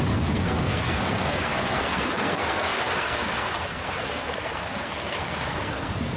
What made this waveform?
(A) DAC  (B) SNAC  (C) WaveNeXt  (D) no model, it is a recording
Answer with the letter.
B